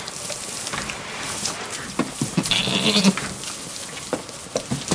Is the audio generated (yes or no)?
no